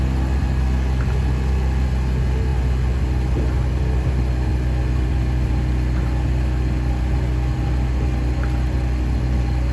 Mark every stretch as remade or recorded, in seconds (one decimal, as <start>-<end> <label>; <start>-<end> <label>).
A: 0.0-9.7 recorded